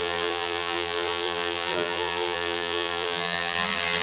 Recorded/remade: remade